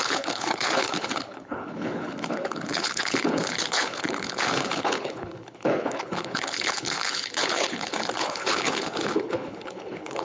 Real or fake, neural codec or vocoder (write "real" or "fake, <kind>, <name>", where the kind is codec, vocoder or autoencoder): fake, codec, HILCodec